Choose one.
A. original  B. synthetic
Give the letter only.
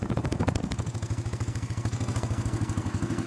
B